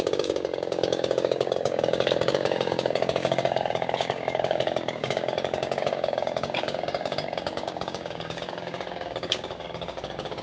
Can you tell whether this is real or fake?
fake